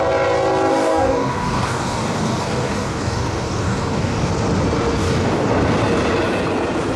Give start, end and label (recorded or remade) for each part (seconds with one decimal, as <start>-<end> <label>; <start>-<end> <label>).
0.0-0.7 recorded; 0.7-4.3 remade; 4.3-5.0 recorded; 5.0-5.5 remade; 5.5-7.0 recorded